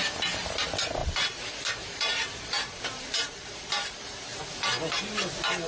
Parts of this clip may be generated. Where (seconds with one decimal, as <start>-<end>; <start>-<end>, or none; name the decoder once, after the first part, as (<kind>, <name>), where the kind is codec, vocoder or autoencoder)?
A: 1.0-4.4 (vocoder, BigVGAN v2)